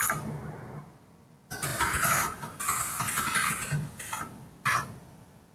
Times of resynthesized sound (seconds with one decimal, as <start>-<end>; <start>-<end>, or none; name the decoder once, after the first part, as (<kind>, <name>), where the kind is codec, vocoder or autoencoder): none